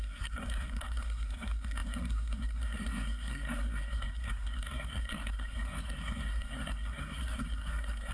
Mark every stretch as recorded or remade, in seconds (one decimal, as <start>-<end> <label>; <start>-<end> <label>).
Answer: 0.0-8.1 remade